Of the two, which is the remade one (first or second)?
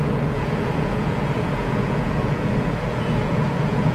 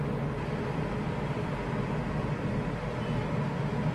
first